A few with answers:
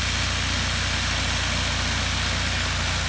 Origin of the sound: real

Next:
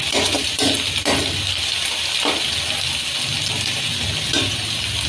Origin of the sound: real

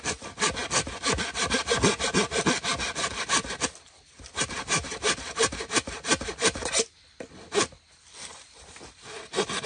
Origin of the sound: real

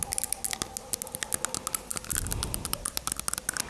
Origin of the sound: real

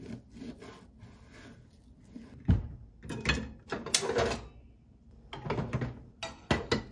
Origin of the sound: real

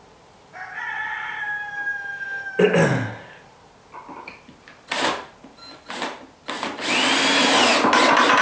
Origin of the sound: real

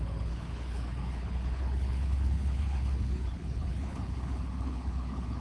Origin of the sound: fake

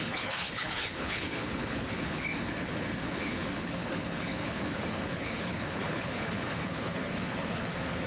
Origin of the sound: fake